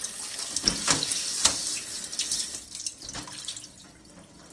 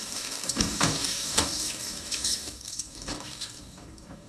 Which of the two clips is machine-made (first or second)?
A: second